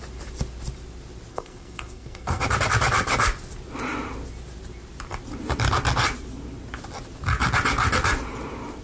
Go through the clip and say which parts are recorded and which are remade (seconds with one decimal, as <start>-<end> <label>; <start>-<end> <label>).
0.0-1.3 recorded; 1.3-2.4 remade; 2.4-8.8 recorded